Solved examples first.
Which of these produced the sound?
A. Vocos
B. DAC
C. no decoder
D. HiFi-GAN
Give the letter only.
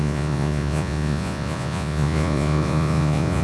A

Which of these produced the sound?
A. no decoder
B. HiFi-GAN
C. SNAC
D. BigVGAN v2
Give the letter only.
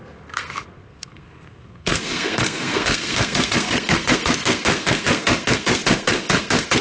C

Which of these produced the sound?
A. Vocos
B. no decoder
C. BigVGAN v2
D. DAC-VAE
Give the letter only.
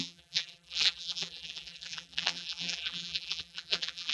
C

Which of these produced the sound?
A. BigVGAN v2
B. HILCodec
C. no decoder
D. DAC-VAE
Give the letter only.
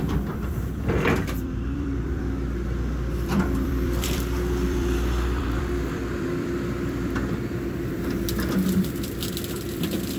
A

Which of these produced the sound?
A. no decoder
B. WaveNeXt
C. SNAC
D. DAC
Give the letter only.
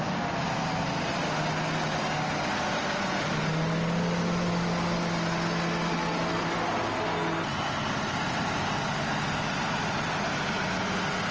A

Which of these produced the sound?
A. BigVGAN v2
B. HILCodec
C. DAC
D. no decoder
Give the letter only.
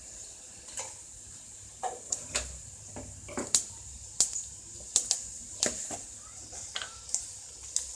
D